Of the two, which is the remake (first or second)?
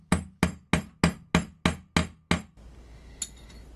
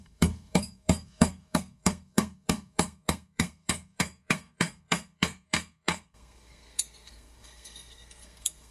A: second